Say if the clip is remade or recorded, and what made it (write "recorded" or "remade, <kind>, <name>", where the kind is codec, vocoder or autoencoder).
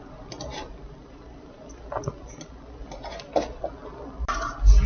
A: recorded